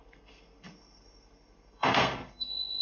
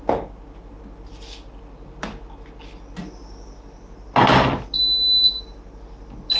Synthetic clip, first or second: first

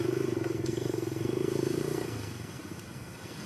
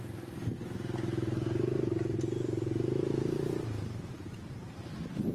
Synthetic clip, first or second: first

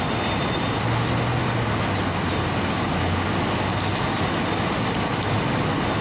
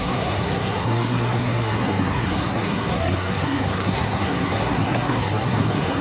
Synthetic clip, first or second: second